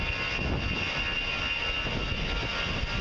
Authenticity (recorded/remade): recorded